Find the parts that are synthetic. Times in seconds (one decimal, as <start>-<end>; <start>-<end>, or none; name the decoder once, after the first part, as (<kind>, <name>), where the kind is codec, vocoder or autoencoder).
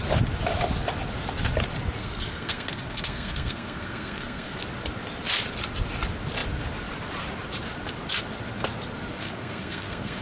2.0-4.6 (codec, SNAC); 9.2-10.2